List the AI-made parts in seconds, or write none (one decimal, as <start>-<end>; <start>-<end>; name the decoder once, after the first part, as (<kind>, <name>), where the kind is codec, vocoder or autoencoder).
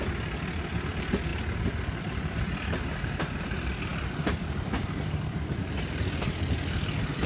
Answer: none